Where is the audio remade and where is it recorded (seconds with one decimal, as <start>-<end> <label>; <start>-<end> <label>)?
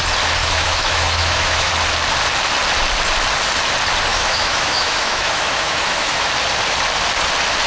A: 0.0-0.4 recorded; 0.4-1.7 remade; 1.7-4.1 recorded; 4.1-6.3 remade; 6.3-7.7 recorded